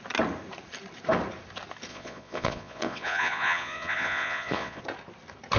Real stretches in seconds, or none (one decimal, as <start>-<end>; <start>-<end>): 0.0-1.9; 4.8-5.6